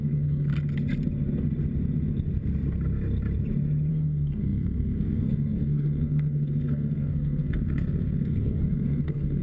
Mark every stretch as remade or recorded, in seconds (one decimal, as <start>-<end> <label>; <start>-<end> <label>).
0.0-0.5 remade; 0.5-3.9 recorded; 3.9-9.4 remade